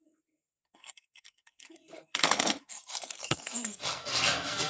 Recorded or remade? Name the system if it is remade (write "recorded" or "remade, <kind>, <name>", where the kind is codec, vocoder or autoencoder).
remade, codec, SNAC